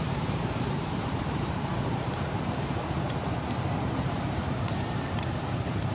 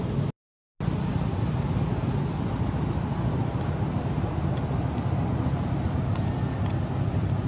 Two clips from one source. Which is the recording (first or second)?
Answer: second